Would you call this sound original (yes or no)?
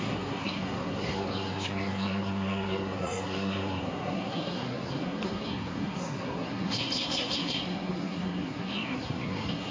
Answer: no